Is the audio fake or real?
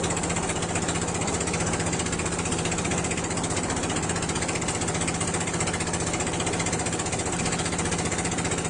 real